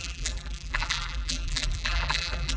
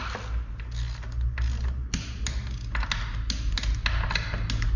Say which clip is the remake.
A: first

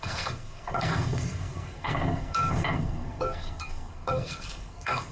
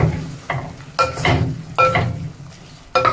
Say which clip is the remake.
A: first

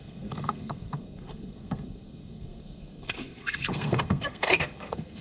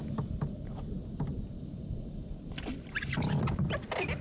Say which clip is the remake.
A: first